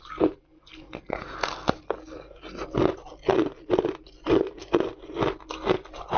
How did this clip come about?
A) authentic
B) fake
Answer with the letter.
A